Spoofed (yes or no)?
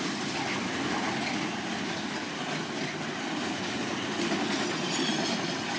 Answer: no